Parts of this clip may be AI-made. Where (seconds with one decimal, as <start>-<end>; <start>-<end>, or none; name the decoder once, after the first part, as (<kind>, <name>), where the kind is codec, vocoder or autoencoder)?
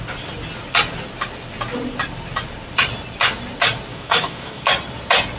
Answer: 3.9-4.7 (autoencoder, DAC-VAE)